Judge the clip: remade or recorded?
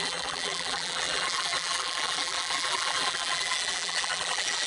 remade